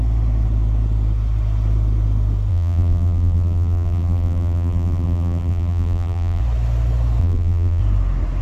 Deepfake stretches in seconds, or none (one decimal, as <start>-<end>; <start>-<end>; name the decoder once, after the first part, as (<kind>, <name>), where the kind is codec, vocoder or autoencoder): 2.5-6.4 (vocoder, BigVGAN v2); 7.2-7.8